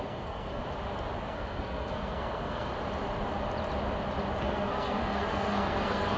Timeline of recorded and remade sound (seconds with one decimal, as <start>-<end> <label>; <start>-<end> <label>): 0.0-0.6 remade; 0.6-1.2 recorded; 1.2-2.7 remade; 2.7-4.4 recorded; 4.4-6.2 remade